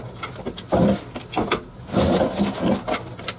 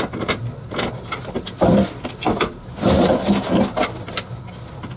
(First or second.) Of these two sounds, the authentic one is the first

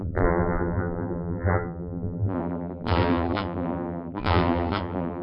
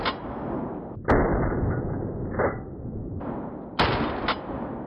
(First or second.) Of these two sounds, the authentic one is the second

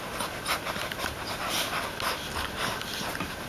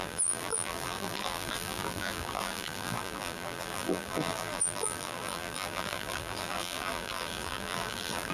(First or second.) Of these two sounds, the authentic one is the first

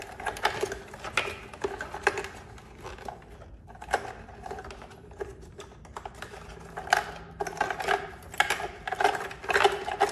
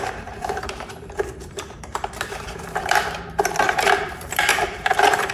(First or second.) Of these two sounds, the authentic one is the first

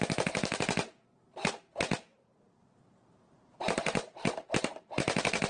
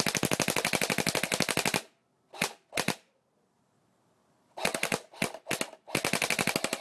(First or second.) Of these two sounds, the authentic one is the second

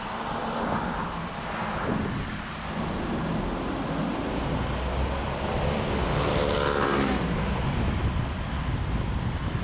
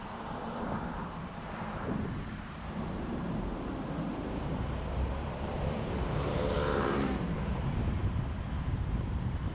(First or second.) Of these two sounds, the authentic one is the first